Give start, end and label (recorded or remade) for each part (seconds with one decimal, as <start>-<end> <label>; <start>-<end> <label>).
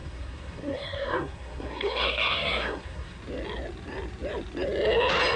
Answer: 0.0-3.2 remade; 3.2-5.4 recorded